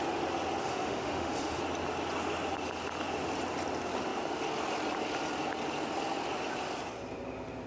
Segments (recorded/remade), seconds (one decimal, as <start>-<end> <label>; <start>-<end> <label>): 0.0-0.6 recorded; 0.6-1.6 remade; 1.6-7.7 recorded